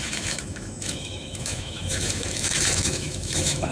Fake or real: fake